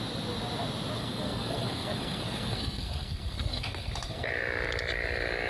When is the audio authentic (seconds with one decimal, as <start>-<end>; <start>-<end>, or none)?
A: 0.0-1.0; 4.3-5.5